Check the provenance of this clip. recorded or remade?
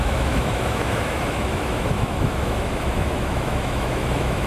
remade